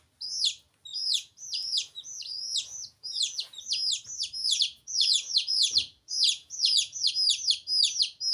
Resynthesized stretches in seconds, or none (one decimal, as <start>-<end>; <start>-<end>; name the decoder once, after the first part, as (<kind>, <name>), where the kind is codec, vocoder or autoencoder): 0.9-3.7 (vocoder, Vocos); 4.4-7.1